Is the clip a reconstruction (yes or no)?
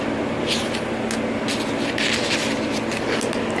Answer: no